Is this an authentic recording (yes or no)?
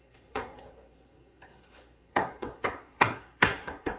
no